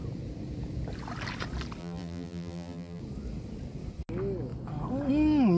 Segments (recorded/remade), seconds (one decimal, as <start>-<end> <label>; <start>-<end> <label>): 0.0-1.8 recorded; 1.8-3.0 remade; 3.0-5.6 recorded